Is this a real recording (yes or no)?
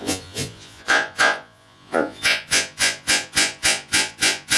no